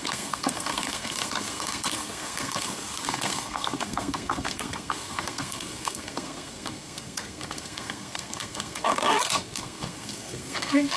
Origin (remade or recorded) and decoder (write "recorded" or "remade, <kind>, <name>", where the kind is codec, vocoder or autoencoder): remade, codec, SNAC